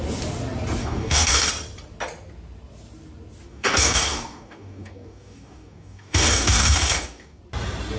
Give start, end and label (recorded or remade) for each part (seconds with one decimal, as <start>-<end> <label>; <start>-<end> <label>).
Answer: 0.0-0.8 recorded; 0.8-1.5 remade; 1.5-3.5 recorded; 3.5-7.4 remade; 7.4-8.0 recorded